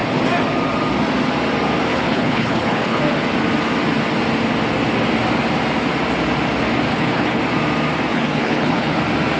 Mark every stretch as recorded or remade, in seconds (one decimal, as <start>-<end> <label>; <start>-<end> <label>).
0.0-1.9 recorded; 1.9-3.0 remade; 3.0-6.9 recorded; 6.9-7.4 remade; 7.4-8.1 recorded; 8.1-9.0 remade; 9.0-9.4 recorded